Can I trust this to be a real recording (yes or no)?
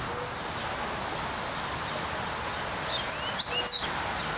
yes